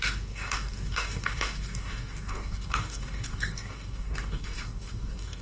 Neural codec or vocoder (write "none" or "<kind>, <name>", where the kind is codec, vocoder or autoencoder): codec, DAC